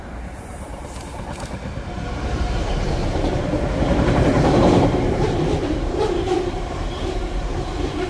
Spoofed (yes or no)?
yes